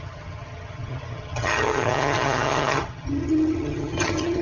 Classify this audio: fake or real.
fake